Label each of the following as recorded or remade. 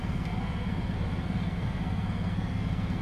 remade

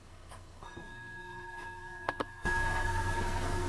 remade